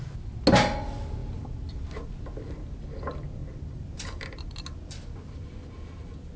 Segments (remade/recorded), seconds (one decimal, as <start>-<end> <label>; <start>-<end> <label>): 0.0-1.2 recorded; 1.2-2.1 remade; 2.1-3.4 recorded; 3.4-4.5 remade; 4.5-6.4 recorded